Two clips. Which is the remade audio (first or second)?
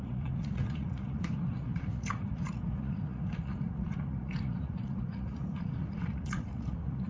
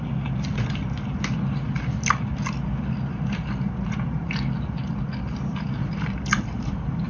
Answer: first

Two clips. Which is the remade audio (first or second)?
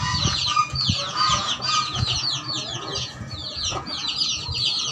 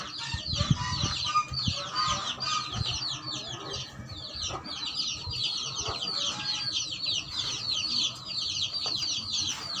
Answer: first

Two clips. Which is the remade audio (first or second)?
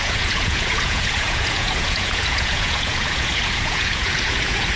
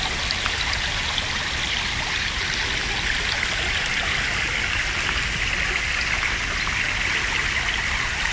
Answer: first